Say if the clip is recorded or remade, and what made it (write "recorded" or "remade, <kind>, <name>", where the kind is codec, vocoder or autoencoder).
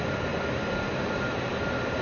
recorded